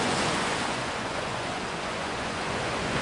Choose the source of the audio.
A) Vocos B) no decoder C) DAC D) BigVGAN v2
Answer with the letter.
A